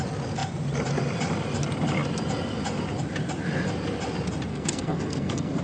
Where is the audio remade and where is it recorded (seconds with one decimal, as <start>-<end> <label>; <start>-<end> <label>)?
0.0-4.5 recorded; 4.5-5.6 remade